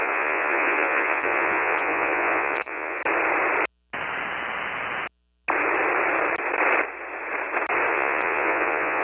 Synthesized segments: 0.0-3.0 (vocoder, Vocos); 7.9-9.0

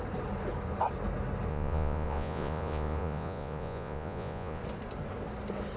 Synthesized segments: 1.5-4.6 (vocoder, Vocos)

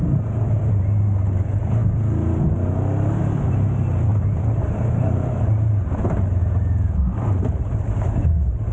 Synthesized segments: 6.4-7.0 (vocoder, Vocos)

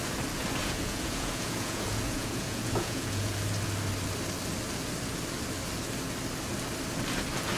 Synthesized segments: 0.6-3.4 (vocoder, Vocos)

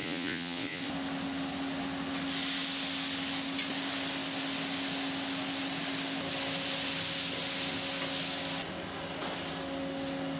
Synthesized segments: 0.0-0.8 (vocoder, Vocos)

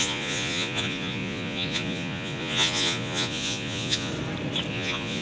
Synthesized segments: 0.0-4.1 (vocoder, Vocos); 4.7-5.2